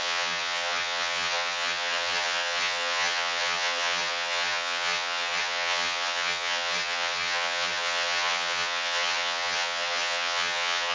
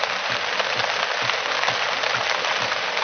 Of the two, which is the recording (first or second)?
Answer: second